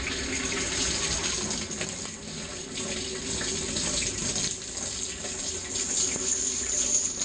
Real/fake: real